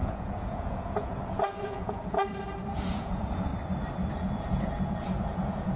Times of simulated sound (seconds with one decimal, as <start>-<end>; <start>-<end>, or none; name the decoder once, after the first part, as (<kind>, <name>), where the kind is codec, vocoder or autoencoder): 0.0-2.2 (vocoder, Vocos); 2.9-3.5; 4.1-5.8